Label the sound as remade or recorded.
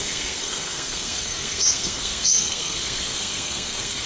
remade